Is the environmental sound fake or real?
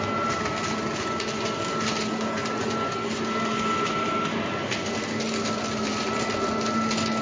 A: real